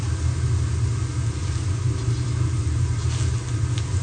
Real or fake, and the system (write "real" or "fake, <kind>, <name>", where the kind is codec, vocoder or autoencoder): real